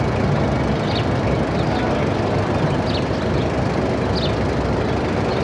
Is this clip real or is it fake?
real